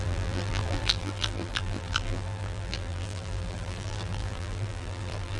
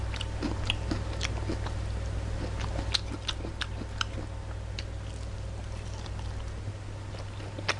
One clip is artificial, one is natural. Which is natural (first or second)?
second